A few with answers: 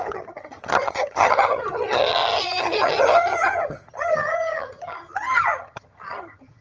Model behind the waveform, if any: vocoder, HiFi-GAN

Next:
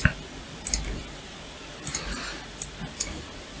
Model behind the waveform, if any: none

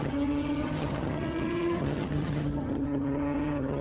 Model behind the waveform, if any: vocoder, HiFi-GAN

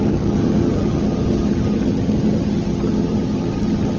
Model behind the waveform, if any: vocoder, HiFi-GAN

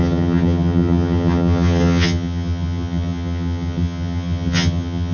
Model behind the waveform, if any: vocoder, HiFi-GAN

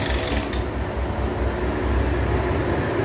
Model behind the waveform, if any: none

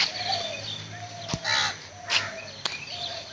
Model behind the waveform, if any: none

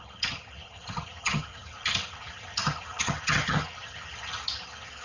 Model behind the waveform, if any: vocoder, HiFi-GAN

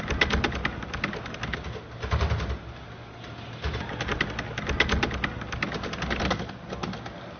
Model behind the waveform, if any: none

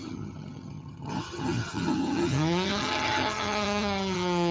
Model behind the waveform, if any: vocoder, HiFi-GAN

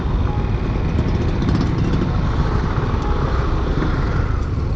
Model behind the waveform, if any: none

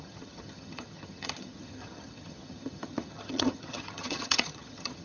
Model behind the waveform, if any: vocoder, HiFi-GAN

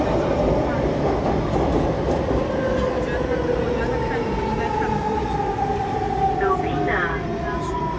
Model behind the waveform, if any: none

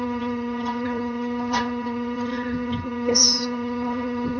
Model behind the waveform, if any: vocoder, HiFi-GAN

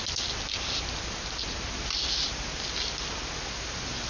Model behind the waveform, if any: none